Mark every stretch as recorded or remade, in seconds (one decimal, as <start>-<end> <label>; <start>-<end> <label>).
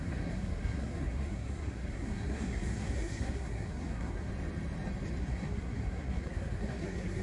0.0-4.3 remade; 4.3-5.2 recorded; 5.2-7.2 remade